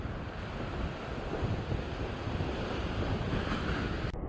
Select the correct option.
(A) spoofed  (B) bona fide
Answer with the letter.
B